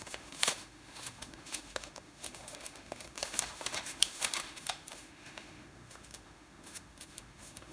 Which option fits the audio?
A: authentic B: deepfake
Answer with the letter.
B